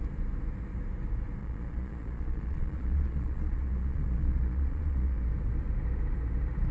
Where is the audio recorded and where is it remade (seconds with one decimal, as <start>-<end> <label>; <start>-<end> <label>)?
0.0-1.4 recorded; 1.4-5.2 remade; 5.2-6.7 recorded